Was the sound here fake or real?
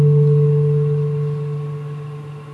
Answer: real